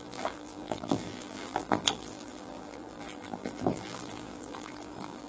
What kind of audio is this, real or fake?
fake